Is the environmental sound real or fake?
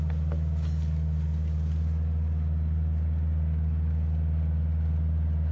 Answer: real